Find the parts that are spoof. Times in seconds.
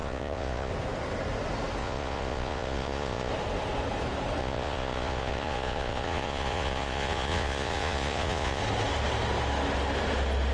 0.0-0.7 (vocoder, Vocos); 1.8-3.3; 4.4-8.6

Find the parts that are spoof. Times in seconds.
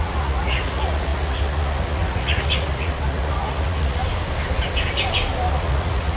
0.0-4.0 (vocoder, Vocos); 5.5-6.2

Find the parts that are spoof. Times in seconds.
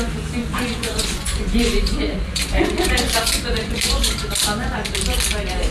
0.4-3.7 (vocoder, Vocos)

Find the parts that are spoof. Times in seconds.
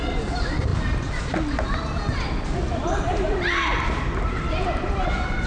none